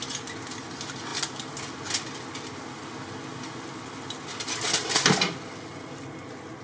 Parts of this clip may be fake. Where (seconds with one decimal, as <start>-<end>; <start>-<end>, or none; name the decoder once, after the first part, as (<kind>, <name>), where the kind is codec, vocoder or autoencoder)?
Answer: none

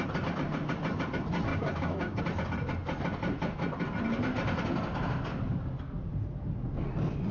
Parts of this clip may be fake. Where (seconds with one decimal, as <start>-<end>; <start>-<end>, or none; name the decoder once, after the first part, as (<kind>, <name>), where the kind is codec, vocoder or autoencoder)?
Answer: 1.5-2.2 (codec, DAC)